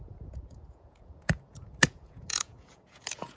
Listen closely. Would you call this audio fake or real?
fake